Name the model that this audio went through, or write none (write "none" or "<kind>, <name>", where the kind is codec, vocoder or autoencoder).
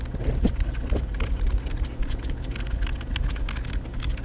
none